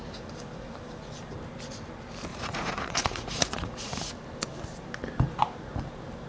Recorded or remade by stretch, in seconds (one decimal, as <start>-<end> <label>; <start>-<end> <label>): 0.0-2.3 recorded; 2.3-4.1 remade; 4.1-6.3 recorded